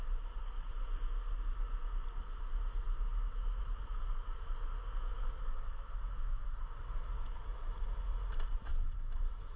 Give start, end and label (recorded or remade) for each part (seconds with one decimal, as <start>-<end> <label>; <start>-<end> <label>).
0.0-9.6 recorded